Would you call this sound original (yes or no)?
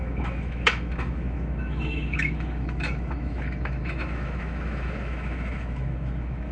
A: no